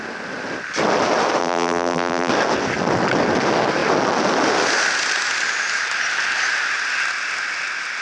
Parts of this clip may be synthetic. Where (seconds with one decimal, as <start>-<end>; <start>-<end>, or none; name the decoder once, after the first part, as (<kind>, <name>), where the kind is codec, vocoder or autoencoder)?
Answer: 1.4-2.3 (vocoder, BigVGAN v2)